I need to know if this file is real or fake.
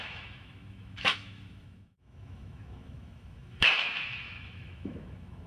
fake